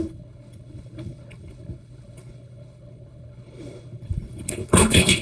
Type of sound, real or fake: fake